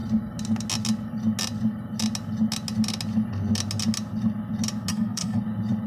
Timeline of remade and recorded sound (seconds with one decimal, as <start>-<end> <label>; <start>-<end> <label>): 0.0-4.9 recorded; 4.9-5.4 remade; 5.4-5.9 recorded